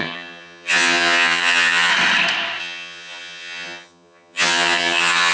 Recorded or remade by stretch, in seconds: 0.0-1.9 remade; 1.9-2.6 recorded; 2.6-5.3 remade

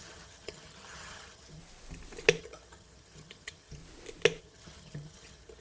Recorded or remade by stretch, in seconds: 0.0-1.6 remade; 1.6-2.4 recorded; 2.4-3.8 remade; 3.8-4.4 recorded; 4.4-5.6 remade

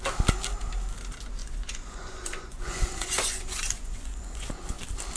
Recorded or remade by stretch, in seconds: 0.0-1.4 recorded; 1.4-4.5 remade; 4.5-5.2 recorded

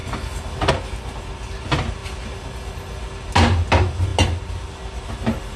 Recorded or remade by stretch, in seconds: 0.0-5.6 recorded

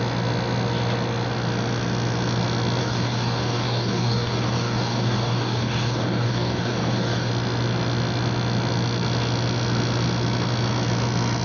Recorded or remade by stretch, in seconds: 0.0-2.8 recorded; 2.8-7.3 remade; 7.3-11.4 recorded

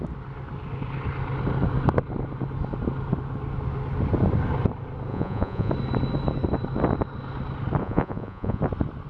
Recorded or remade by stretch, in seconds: 0.0-5.1 recorded; 5.1-5.7 remade; 5.7-7.8 recorded; 7.8-8.6 remade; 8.6-9.1 recorded